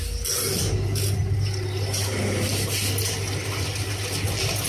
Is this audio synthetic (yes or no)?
no